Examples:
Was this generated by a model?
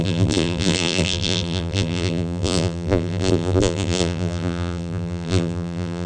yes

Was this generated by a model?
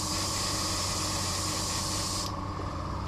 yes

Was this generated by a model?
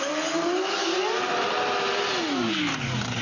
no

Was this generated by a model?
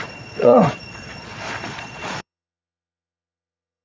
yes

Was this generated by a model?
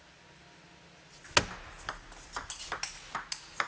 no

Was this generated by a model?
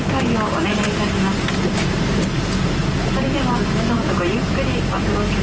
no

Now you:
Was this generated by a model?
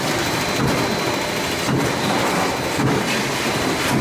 no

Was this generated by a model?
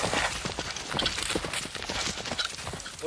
no